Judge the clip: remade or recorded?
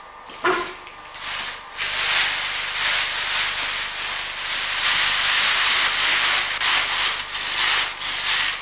recorded